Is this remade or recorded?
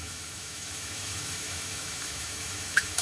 remade